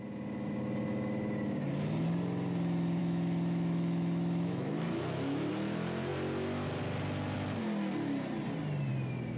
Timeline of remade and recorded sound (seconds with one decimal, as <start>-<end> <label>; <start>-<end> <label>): 0.0-3.0 recorded; 3.0-5.5 remade; 5.5-9.4 recorded